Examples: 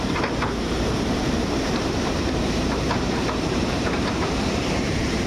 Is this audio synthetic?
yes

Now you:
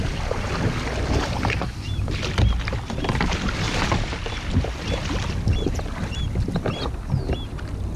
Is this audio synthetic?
no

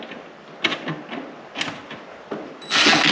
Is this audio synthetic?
no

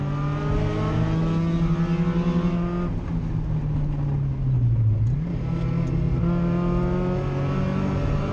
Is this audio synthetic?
no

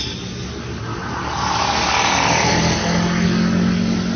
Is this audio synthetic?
no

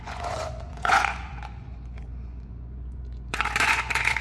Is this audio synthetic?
yes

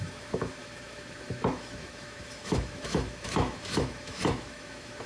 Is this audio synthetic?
yes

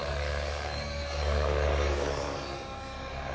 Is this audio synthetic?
yes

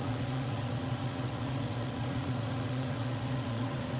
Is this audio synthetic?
yes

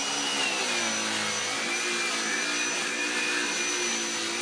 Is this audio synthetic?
no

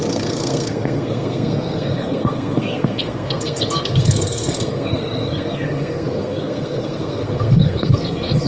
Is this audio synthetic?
yes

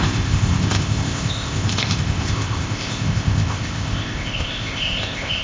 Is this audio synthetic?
yes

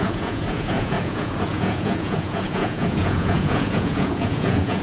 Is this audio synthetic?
yes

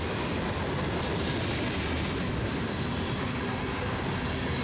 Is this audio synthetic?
no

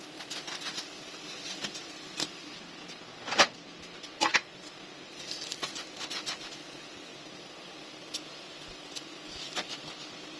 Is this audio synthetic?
no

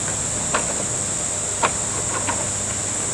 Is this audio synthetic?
no